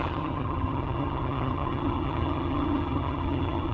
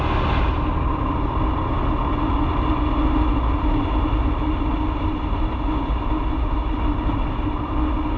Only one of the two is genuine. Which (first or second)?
second